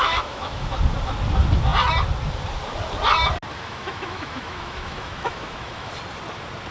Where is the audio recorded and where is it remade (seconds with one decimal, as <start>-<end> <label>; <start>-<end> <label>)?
0.0-0.8 remade; 0.8-3.5 recorded; 3.5-5.9 remade; 5.9-6.7 recorded